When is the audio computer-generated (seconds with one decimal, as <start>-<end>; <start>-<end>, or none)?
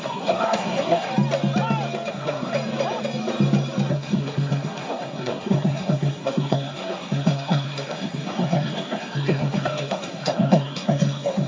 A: 0.0-1.1; 2.1-2.5; 3.9-11.5